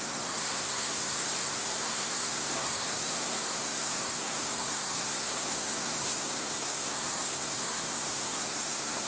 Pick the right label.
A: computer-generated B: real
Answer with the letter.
A